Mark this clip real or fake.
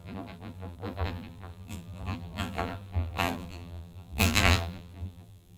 fake